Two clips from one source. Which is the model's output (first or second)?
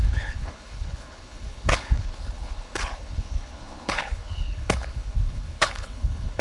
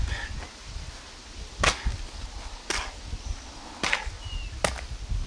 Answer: first